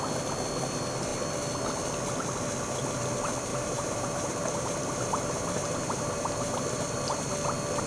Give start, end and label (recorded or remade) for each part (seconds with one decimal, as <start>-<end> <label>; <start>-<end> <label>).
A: 0.0-3.5 recorded; 3.5-6.8 remade; 6.8-7.9 recorded